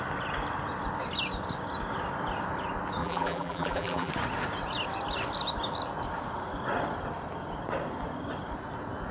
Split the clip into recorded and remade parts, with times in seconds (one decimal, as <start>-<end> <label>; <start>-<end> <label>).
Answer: 0.0-3.0 recorded; 3.0-4.1 remade; 4.1-9.1 recorded